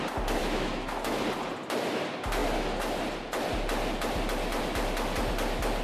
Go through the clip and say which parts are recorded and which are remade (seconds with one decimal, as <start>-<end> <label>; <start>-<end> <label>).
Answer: 0.0-0.4 recorded; 0.4-1.2 remade; 1.2-5.8 recorded